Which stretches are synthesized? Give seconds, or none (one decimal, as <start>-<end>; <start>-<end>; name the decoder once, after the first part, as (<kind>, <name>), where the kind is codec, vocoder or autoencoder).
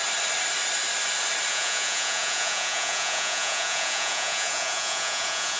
1.5-5.6 (vocoder, Vocos)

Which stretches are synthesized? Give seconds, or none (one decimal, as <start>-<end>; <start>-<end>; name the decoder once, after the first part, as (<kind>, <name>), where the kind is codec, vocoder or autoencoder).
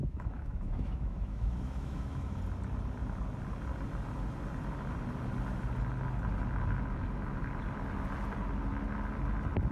0.0-2.4 (autoencoder, DAC-VAE)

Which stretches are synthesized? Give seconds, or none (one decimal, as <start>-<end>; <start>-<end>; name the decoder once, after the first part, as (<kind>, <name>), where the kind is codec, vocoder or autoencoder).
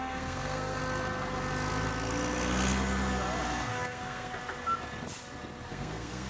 0.0-0.8 (codec, SNAC); 3.7-4.3; 5.7-6.3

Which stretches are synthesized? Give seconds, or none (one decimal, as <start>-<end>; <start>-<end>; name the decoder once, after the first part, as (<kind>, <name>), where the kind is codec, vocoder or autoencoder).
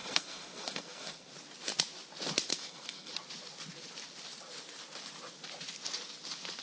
0.0-1.3 (codec, SNAC); 2.5-3.1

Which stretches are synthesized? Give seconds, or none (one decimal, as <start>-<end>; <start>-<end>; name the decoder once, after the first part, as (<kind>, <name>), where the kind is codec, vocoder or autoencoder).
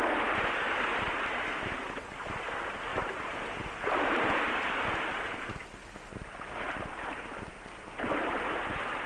2.9-5.5 (vocoder, BigVGAN v2); 6.1-7.3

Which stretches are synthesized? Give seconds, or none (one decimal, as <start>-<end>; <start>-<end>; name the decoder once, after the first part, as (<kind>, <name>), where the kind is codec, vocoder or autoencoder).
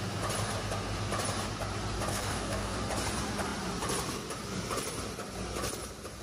2.1-2.8 (codec, DAC)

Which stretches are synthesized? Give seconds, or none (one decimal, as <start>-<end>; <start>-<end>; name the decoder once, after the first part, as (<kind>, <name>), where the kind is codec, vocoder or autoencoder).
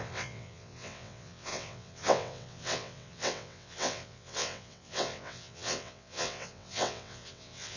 0.0-7.8 (vocoder, WaveNeXt)